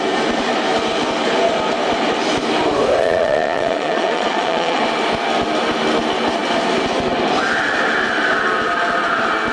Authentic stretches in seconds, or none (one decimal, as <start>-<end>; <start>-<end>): 0.0-3.0; 4.8-9.5